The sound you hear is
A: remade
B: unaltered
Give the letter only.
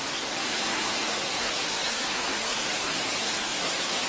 A